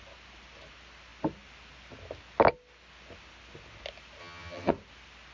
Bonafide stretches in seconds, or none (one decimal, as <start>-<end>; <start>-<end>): 0.0-4.2; 4.7-5.3